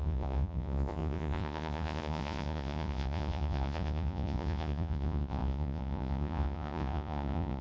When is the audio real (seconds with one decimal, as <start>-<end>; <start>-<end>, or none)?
none